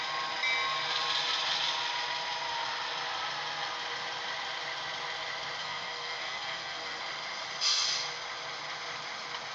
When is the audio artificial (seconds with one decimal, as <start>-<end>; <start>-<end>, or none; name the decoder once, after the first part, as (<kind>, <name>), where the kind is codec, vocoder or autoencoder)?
5.6-7.0 (codec, SNAC)